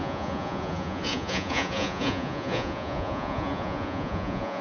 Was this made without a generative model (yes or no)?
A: no